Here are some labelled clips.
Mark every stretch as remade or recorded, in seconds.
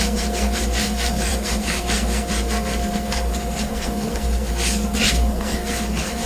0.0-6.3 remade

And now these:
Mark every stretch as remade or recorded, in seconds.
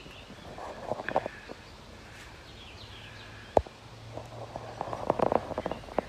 0.0-6.1 recorded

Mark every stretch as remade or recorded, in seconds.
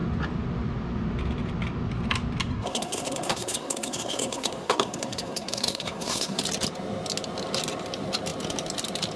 0.0-2.5 recorded; 2.5-6.4 remade; 6.4-9.2 recorded